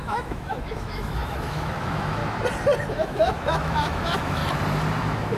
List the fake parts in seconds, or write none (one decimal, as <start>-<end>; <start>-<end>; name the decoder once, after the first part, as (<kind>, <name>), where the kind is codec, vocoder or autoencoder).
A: 0.0-2.2 (autoencoder, DAC-VAE); 2.9-4.4; 5.0-5.4